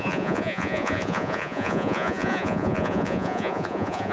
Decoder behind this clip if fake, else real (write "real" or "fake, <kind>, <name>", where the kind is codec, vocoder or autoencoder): fake, vocoder, Vocos